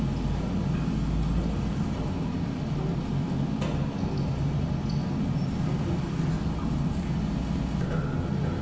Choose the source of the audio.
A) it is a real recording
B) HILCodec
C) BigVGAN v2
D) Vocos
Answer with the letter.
A